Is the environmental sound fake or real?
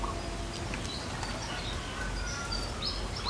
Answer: real